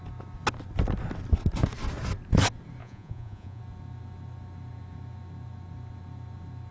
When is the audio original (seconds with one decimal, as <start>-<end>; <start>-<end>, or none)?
0.0-2.8; 3.6-6.7